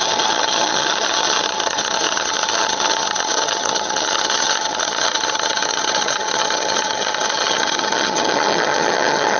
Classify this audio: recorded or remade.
remade